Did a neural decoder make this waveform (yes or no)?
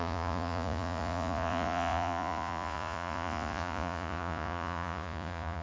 yes